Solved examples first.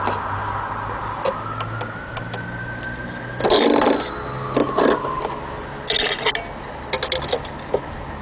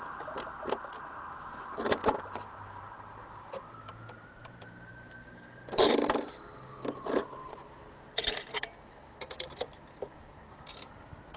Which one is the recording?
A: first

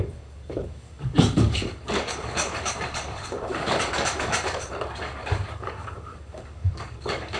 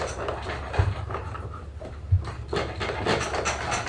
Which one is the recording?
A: second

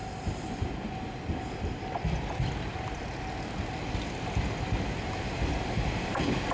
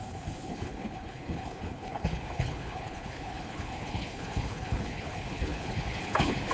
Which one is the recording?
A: first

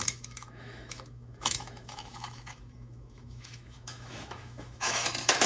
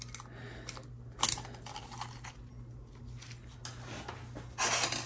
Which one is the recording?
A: second